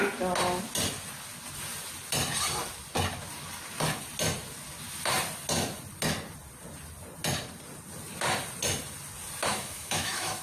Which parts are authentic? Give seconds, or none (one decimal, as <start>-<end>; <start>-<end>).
0.0-9.5